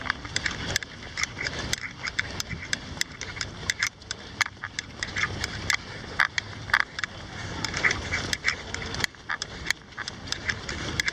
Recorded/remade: remade